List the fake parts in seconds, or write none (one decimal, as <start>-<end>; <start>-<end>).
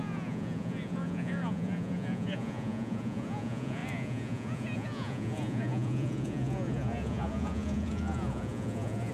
0.0-9.1